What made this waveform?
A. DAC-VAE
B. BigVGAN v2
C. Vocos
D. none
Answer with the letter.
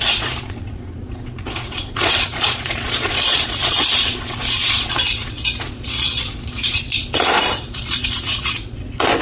C